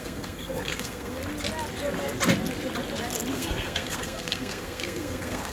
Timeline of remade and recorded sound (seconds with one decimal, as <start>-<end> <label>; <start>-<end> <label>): 0.0-1.2 remade; 1.2-3.3 recorded; 3.3-5.5 remade